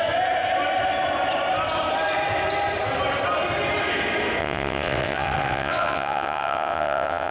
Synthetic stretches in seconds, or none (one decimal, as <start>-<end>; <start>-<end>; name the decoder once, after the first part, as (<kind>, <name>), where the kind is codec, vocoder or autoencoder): 4.4-7.3 (vocoder, WaveNeXt)